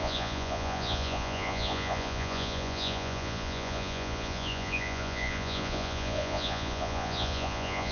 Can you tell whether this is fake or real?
fake